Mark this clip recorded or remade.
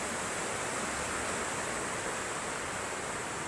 recorded